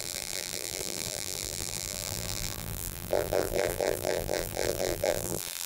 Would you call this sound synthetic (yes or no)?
yes